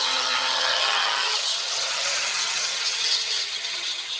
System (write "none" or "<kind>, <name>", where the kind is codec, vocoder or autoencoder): vocoder, HiFi-GAN